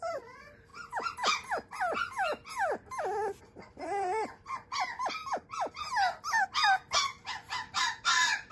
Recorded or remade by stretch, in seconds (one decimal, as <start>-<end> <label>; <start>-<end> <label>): 0.0-0.7 remade; 0.7-3.4 recorded; 3.4-5.2 remade; 5.2-7.8 recorded; 7.8-8.5 remade